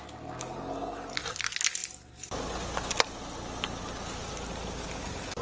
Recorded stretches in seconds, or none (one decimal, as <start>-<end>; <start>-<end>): 0.0-5.4